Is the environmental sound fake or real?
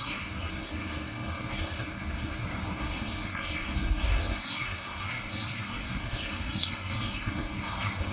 fake